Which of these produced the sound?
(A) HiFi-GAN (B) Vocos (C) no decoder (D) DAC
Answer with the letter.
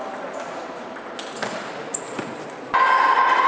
C